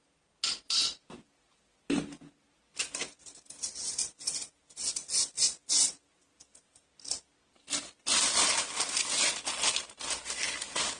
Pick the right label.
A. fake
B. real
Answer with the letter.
B